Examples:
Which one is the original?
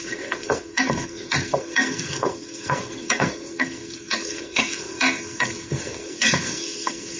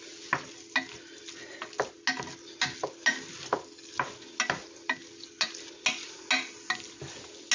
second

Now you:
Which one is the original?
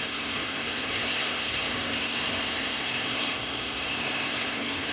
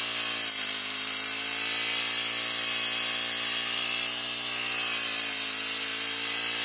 second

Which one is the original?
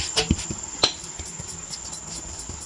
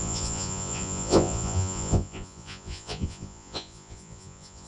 first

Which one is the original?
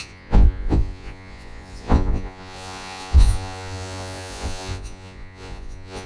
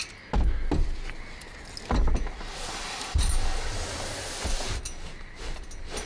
second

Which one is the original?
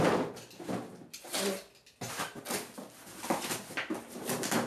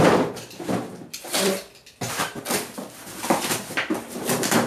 first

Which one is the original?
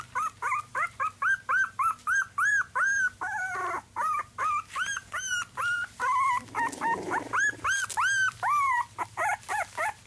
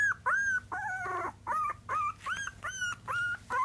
second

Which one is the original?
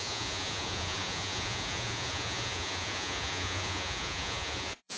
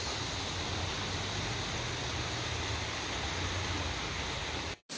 second